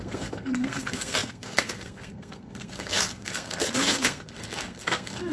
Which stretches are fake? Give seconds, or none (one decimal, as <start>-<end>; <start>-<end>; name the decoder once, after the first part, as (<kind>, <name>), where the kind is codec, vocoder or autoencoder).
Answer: 0.0-5.3 (codec, SNAC)